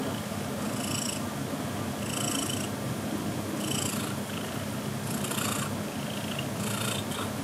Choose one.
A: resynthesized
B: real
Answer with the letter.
B